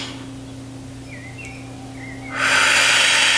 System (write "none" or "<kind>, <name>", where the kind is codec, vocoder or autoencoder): none